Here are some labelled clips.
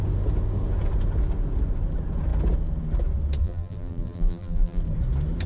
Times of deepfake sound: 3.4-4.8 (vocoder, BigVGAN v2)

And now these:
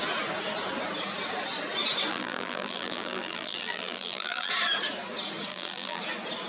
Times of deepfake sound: 2.1-4.5 (vocoder, BigVGAN v2); 5.5-6.0

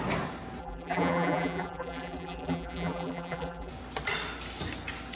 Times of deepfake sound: 0.6-3.7 (vocoder, BigVGAN v2)

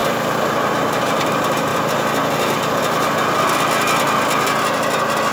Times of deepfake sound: 0.0-1.7 (vocoder, BigVGAN v2)

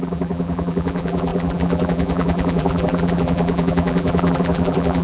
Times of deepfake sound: 0.0-5.0 (vocoder, BigVGAN v2)

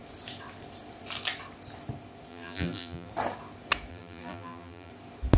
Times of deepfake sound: 2.3-3.1 (vocoder, BigVGAN v2); 3.9-4.9